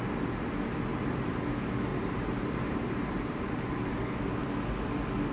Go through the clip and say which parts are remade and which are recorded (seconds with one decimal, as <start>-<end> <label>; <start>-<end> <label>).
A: 0.0-0.9 recorded; 0.9-1.4 remade; 1.4-1.9 recorded; 1.9-3.8 remade; 3.8-5.3 recorded